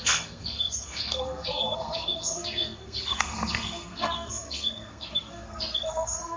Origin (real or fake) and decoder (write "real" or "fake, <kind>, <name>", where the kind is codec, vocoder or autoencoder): fake, codec, SNAC